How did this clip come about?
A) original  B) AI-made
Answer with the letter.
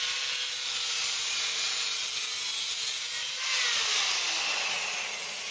A